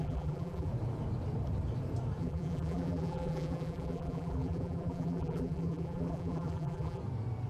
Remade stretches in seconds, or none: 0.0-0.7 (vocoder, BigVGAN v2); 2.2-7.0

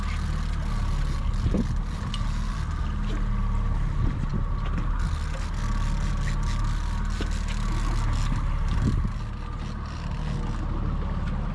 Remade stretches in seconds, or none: none

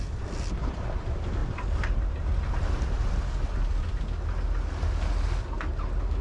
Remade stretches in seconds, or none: 1.4-2.5 (vocoder, BigVGAN v2)